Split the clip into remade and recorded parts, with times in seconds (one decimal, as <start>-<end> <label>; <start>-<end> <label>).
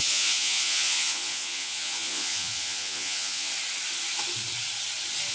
0.0-3.5 remade; 3.5-5.3 recorded